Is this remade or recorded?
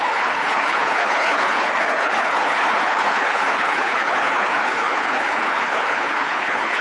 remade